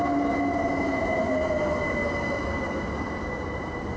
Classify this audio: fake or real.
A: real